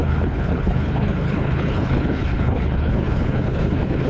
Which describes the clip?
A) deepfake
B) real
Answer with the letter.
A